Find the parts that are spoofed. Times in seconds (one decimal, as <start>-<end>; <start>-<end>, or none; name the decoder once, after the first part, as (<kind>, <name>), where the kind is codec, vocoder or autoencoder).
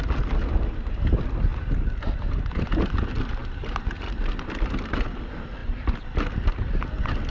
1.5-2.6 (vocoder, BigVGAN v2); 3.4-4.7; 5.6-7.3